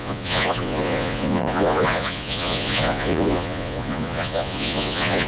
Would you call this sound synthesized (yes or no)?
yes